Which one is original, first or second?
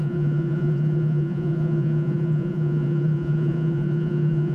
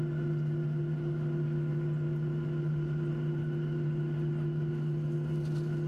second